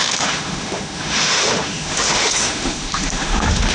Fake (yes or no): yes